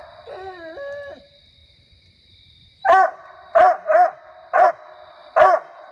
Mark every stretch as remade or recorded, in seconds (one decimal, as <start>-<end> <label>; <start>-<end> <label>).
0.0-1.6 recorded; 1.6-4.7 remade; 4.7-5.9 recorded